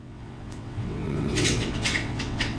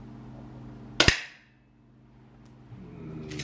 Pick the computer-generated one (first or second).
first